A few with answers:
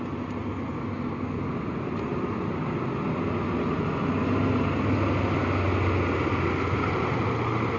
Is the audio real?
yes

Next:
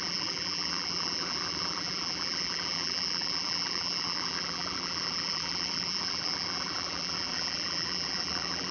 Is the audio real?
no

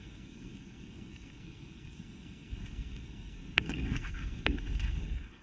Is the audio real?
no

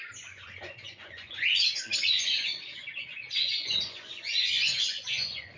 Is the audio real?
no